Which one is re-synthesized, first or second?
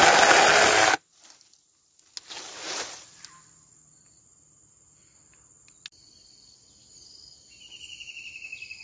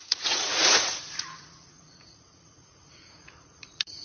second